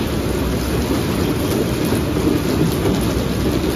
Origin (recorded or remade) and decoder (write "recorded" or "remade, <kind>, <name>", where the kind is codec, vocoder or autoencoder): recorded